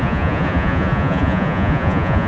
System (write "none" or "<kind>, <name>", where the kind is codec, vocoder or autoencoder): vocoder, Vocos